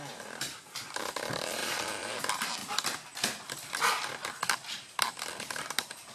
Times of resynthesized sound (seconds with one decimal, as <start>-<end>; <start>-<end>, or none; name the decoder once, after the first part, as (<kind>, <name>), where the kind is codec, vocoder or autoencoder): 0.0-2.6 (vocoder, BigVGAN v2); 4.5-6.1